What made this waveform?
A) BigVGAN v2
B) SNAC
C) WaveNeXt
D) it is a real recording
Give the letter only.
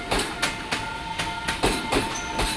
D